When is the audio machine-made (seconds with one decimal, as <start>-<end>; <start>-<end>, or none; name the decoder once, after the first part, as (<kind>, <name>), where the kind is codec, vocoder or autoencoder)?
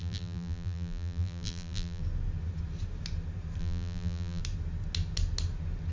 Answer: 0.0-2.0 (vocoder, BigVGAN v2); 3.6-4.4